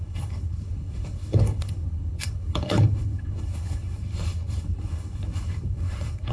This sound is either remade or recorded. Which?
remade